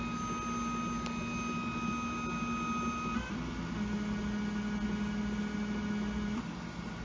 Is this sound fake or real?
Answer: real